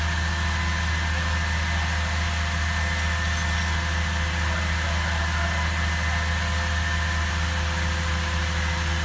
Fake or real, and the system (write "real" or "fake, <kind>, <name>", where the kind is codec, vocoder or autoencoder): real